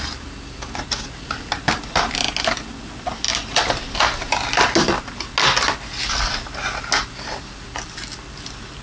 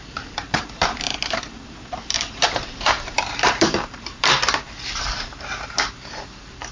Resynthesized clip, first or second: second